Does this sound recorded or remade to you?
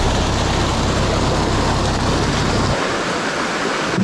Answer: recorded